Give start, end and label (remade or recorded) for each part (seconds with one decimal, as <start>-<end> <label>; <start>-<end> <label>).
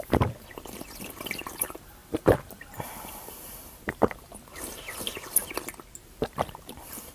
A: 0.0-5.1 remade; 5.1-6.0 recorded; 6.0-7.1 remade